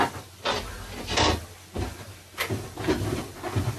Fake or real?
real